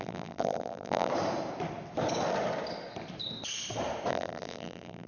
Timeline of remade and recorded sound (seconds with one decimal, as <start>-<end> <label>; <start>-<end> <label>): 0.0-1.1 remade; 1.1-4.1 recorded; 4.1-5.1 remade